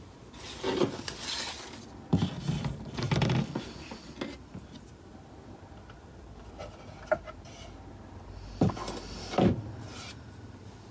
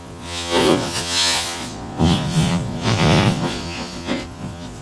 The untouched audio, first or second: first